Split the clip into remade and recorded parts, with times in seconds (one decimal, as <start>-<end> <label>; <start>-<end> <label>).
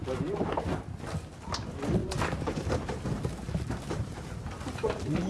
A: 0.0-2.0 recorded; 2.0-5.3 remade